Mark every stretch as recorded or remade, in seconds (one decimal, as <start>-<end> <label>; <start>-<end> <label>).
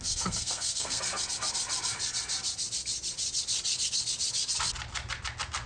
0.0-1.0 remade; 1.0-5.7 recorded